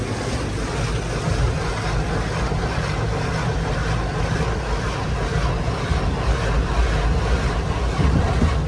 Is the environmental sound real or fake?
real